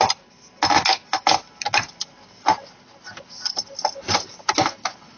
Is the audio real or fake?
real